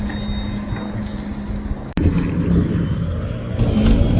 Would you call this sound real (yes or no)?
yes